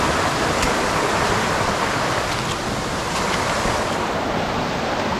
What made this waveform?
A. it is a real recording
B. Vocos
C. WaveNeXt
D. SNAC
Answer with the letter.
A